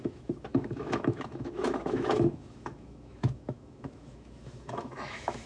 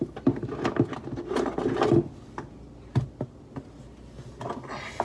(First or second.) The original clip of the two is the second